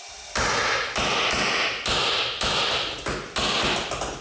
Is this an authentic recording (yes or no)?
yes